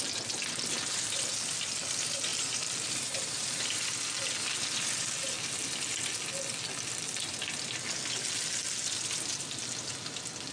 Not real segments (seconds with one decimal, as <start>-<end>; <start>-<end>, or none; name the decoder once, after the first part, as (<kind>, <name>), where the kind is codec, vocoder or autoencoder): 2.3-3.6 (vocoder, BigVGAN v2)